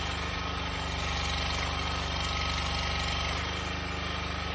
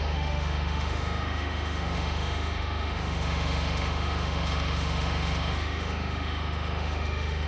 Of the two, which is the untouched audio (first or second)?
first